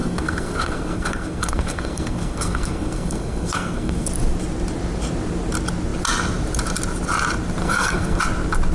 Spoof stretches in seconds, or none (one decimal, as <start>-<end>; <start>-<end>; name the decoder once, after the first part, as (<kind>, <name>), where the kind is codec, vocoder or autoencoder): 0.0-4.1 (codec, SNAC); 7.6-8.2